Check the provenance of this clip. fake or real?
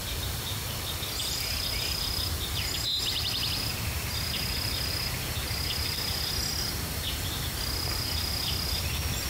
fake